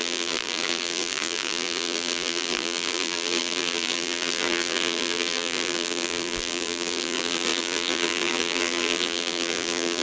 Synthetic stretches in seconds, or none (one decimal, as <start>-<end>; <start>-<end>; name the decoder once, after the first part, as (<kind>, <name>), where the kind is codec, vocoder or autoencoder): 0.0-10.0 (vocoder, BigVGAN v2)